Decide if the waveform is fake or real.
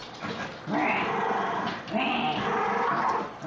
real